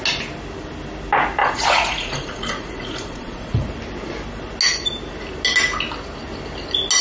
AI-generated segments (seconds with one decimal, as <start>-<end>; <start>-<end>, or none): 1.4-3.7